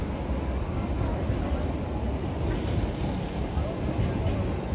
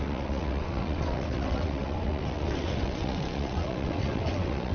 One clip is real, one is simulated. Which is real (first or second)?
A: first